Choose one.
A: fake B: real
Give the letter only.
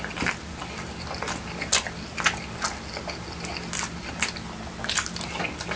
B